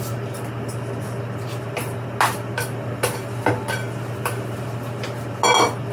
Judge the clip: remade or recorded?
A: recorded